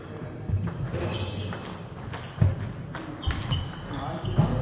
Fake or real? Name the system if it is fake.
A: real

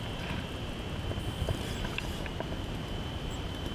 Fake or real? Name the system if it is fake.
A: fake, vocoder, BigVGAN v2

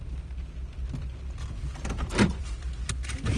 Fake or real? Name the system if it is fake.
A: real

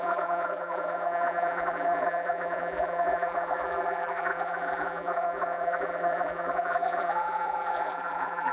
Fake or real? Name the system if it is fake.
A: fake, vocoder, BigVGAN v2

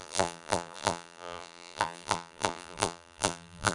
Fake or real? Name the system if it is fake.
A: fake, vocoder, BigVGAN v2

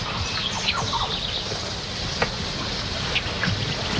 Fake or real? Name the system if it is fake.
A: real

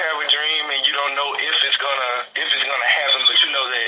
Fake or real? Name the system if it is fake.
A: real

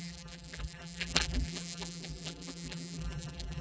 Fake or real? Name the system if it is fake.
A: fake, vocoder, BigVGAN v2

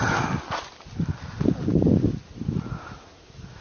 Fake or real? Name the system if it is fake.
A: real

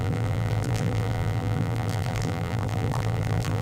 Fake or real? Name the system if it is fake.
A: fake, vocoder, BigVGAN v2